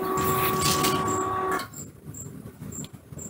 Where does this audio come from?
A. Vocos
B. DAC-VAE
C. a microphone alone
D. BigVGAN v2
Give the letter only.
C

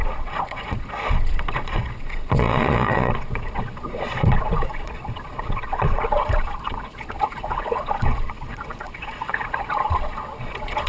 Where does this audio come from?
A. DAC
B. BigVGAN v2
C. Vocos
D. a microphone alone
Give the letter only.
C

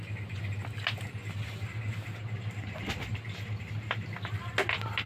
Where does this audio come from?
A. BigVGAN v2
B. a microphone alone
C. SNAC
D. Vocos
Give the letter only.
B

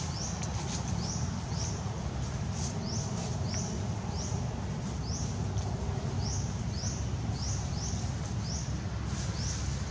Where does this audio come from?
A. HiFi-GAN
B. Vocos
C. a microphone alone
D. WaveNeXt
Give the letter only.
C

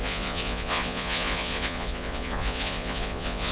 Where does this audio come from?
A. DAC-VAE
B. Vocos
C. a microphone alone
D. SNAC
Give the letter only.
B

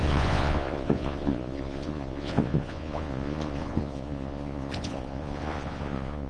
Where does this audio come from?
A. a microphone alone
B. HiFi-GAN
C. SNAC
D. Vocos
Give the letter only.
D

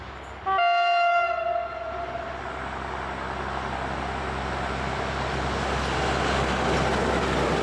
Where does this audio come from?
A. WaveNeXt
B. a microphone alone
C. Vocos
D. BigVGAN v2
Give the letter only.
B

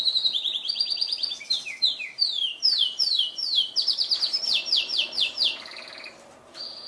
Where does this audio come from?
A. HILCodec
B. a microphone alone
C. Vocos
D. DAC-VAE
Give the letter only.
B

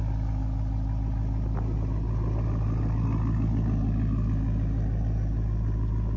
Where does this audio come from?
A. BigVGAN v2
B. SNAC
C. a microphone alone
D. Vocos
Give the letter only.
C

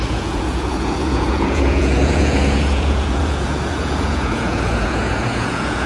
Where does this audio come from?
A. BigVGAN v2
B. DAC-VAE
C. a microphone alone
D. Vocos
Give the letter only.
D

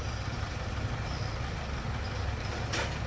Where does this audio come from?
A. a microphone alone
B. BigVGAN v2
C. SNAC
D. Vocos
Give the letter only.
A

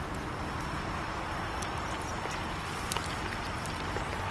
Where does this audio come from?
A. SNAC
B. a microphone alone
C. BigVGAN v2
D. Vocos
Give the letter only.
B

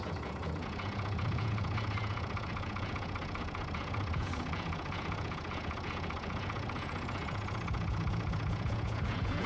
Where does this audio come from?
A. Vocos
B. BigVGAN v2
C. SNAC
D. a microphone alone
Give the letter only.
A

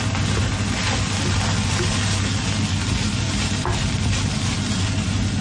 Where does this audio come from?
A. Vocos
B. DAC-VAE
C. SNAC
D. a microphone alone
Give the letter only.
D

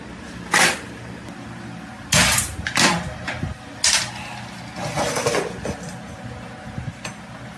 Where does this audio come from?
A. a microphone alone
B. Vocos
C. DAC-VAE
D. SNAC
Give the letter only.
A